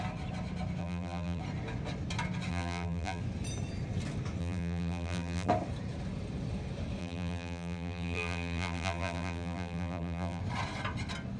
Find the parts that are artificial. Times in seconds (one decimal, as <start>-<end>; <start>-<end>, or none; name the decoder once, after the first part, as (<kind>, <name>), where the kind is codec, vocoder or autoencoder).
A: 0.8-1.4 (vocoder, BigVGAN v2); 2.5-3.2; 4.4-5.5; 7.0-10.4

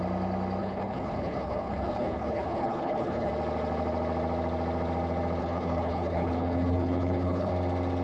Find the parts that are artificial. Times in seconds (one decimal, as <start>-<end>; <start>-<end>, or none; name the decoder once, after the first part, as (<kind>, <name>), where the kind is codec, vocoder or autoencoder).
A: 0.6-3.3 (codec, HILCodec); 5.4-7.5

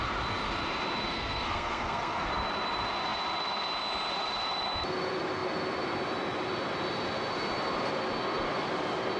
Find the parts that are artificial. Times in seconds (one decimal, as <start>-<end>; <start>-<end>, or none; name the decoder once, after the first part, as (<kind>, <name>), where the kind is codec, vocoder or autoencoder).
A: 1.1-2.3 (codec, SNAC)

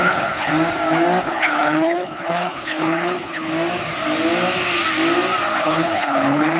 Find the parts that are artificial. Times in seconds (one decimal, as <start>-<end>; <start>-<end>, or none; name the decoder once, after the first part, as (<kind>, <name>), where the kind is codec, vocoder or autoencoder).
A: 0.0-0.5 (codec, HILCodec); 1.2-3.5; 5.6-6.6

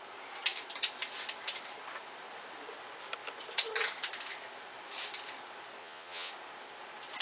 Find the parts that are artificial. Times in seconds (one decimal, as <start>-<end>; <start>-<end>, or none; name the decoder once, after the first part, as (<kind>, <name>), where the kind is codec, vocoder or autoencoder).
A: 5.8-6.3 (vocoder, Vocos)

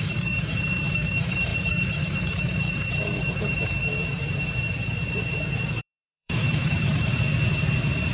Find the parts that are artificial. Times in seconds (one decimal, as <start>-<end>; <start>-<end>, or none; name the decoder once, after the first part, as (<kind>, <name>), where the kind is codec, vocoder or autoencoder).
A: 0.0-3.9 (autoencoder, DAC-VAE); 5.8-7.1